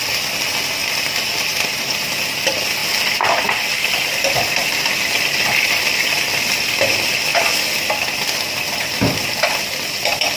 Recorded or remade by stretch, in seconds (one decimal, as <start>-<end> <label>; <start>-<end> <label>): 0.0-0.8 recorded; 0.8-2.2 remade; 2.2-10.4 recorded